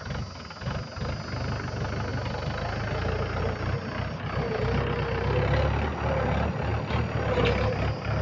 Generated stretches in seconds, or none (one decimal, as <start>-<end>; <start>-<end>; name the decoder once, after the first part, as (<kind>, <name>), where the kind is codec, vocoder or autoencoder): none